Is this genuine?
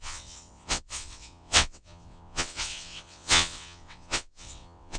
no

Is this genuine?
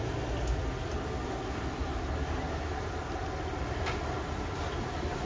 yes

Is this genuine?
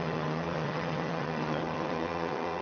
no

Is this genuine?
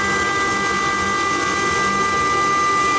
yes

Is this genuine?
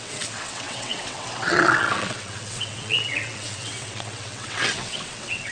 no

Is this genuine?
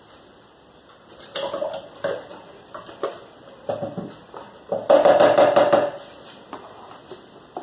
yes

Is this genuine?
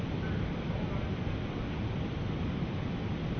yes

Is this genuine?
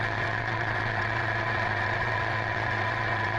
no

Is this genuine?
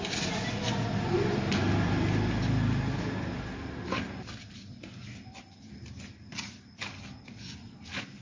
yes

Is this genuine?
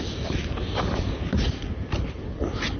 yes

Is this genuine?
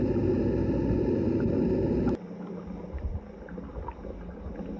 yes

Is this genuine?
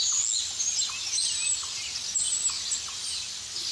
yes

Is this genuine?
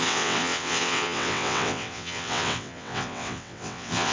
no